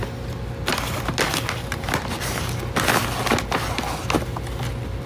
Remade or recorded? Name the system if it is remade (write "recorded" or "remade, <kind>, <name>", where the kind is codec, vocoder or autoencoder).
recorded